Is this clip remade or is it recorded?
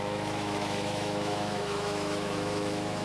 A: remade